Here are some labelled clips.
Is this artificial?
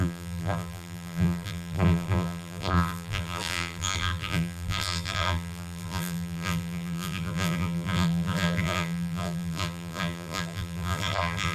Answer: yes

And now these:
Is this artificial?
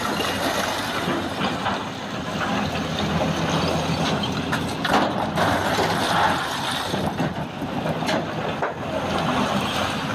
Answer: no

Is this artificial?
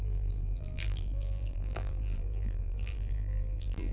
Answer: yes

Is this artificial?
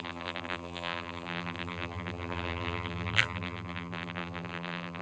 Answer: yes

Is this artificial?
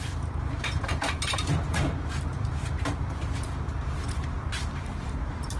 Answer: yes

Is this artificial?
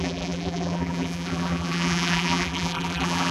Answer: yes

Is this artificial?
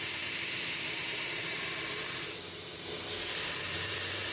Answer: yes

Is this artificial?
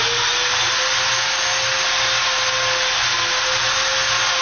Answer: no